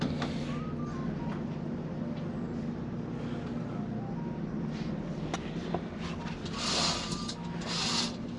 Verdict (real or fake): real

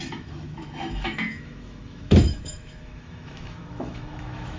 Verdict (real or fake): fake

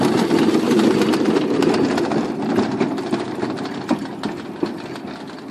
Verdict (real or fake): real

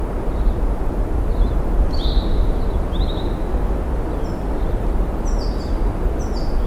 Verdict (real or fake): real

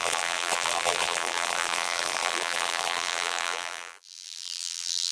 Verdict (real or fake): fake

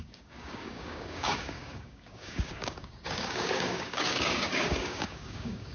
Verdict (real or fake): fake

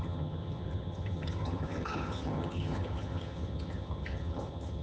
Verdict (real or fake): fake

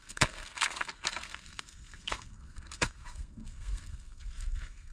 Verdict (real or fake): fake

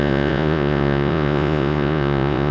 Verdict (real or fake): fake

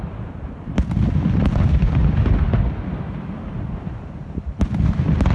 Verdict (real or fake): real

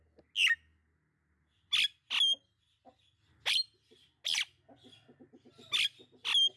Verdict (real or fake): real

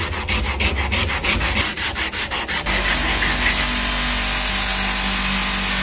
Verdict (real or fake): real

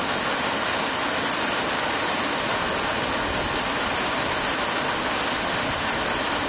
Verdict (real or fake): real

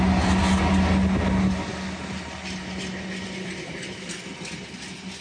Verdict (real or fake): real